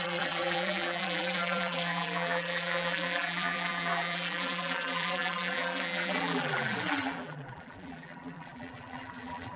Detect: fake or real fake